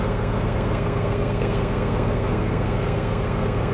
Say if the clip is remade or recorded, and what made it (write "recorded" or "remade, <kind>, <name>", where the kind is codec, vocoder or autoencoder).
remade, codec, SNAC